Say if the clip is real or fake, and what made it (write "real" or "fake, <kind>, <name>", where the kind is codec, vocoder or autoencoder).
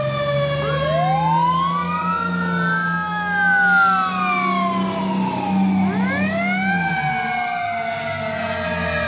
real